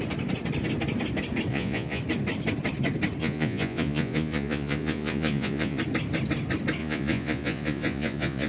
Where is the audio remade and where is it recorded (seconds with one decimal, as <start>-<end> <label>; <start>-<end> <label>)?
0.0-1.5 recorded; 1.5-2.0 remade; 2.0-3.2 recorded; 3.2-5.8 remade; 5.8-6.8 recorded; 6.8-8.5 remade